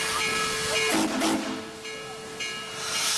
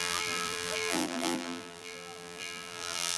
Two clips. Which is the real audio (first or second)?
first